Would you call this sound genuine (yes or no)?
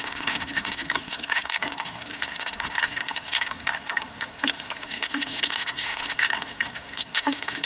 no